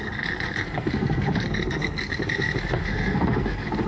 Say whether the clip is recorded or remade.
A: remade